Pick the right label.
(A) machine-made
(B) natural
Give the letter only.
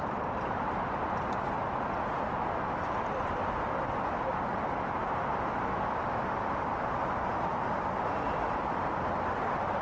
B